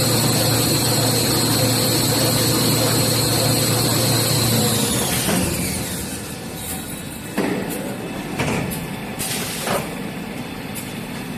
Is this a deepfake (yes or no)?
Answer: no